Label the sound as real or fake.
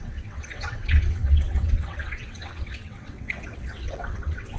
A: fake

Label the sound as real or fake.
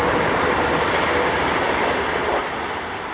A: real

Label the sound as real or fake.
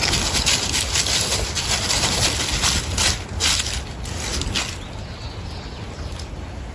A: real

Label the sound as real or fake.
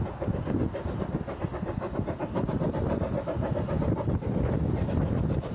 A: real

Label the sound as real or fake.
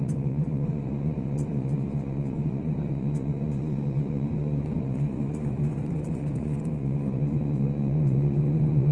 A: fake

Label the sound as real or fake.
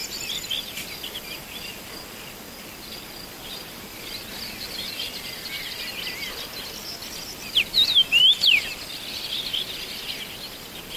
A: real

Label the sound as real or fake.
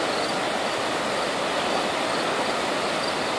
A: real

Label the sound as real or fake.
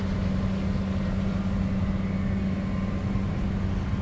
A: real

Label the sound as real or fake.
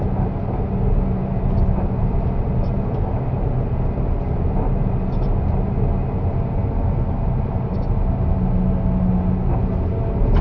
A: real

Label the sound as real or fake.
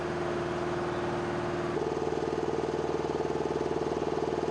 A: real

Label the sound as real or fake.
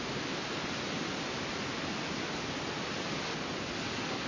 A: real